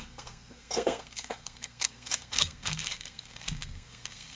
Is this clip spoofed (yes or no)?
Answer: yes